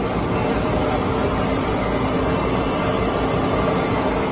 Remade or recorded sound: recorded